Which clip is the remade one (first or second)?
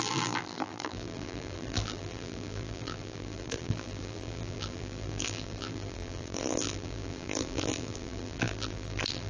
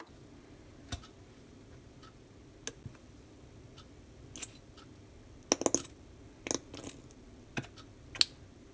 first